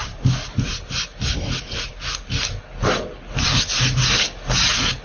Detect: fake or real real